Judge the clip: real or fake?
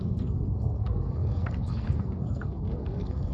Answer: fake